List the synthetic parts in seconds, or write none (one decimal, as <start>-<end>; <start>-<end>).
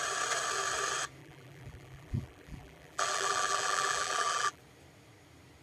1.2-4.6